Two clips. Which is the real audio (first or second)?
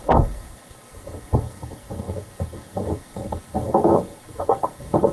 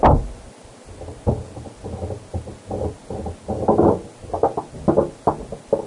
second